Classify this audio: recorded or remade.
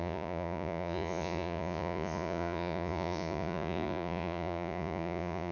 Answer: remade